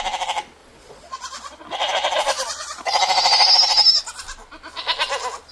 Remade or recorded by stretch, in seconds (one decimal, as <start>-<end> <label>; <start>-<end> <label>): 0.0-0.6 recorded; 0.6-1.6 remade; 1.6-2.5 recorded; 2.5-3.0 remade; 3.0-5.5 recorded